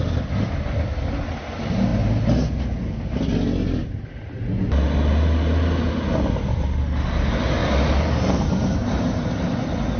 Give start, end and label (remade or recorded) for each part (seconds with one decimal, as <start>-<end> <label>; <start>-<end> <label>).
0.0-7.6 recorded; 7.6-9.5 remade; 9.5-10.0 recorded